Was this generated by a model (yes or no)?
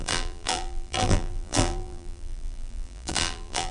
yes